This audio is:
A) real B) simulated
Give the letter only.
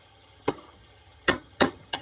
B